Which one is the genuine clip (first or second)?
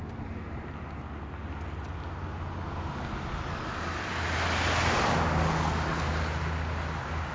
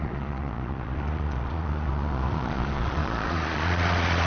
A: first